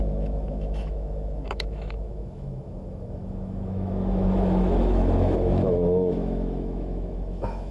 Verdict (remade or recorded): remade